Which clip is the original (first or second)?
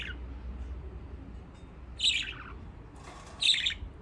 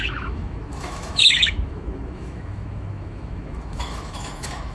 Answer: first